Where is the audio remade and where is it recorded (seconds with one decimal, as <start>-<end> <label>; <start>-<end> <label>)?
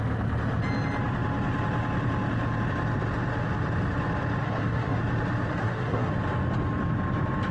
0.0-4.4 recorded; 4.4-5.0 remade; 5.0-5.5 recorded; 5.5-6.1 remade; 6.1-7.5 recorded